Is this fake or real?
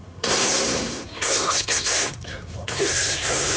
fake